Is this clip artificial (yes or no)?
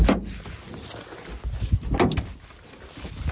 no